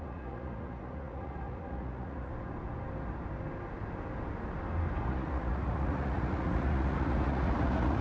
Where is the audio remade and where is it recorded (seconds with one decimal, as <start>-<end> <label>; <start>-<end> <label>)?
0.0-2.3 remade; 2.3-5.0 recorded; 5.0-8.0 remade